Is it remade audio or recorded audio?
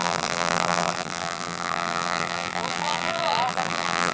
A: remade